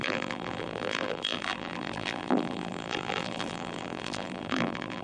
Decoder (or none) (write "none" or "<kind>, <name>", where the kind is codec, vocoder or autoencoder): vocoder, BigVGAN v2